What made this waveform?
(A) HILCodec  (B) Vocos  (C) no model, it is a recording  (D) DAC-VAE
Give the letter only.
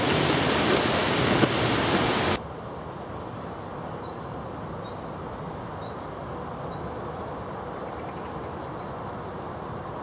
C